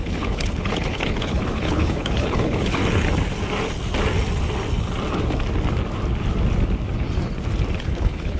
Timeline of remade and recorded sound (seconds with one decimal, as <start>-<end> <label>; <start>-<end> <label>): 0.0-2.8 remade; 2.8-7.8 recorded; 7.8-8.4 remade